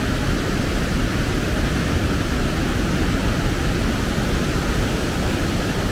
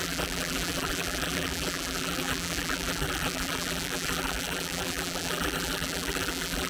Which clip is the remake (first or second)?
second